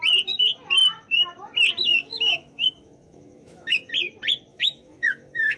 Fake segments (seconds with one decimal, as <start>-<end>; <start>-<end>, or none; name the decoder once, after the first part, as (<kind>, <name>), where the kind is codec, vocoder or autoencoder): 1.9-3.9 (autoencoder, DAC-VAE); 4.5-5.6